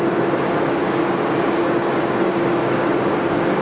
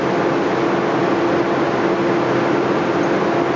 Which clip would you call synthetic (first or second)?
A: first